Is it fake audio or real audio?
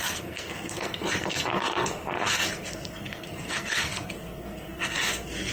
fake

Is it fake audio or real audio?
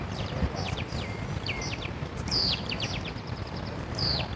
fake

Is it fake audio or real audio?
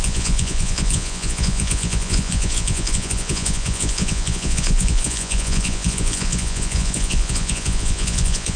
fake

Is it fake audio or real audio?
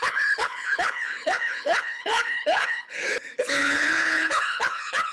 fake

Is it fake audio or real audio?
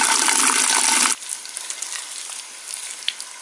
real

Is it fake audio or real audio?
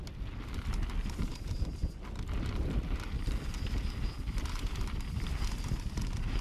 real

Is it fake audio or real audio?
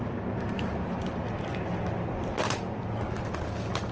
real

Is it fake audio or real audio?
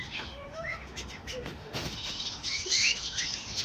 fake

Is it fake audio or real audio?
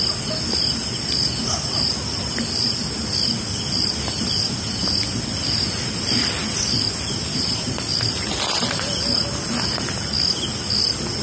real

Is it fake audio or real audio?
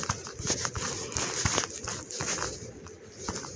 real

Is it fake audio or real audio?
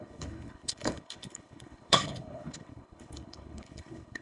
fake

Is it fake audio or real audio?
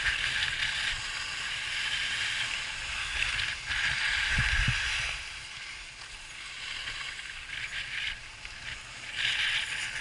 real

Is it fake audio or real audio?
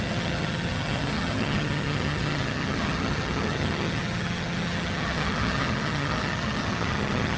fake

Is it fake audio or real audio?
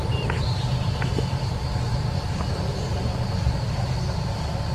real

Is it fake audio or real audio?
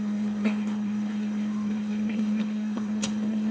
fake